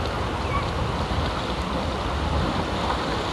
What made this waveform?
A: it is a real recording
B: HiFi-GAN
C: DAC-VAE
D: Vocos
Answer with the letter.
A